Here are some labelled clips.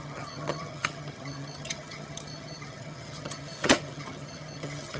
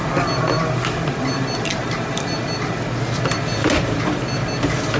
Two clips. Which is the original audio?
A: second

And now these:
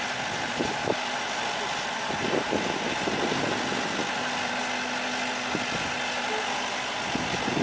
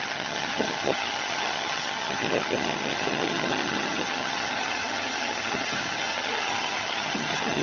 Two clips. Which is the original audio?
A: first